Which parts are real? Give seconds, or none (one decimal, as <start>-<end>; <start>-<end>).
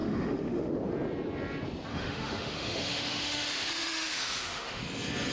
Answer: 0.7-1.9; 4.8-5.3